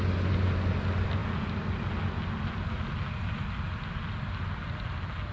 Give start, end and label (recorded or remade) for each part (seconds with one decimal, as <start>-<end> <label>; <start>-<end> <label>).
0.0-5.3 recorded